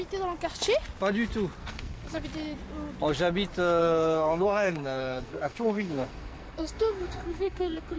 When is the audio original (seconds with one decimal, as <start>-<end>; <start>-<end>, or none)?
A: 0.0-1.6; 2.2-3.8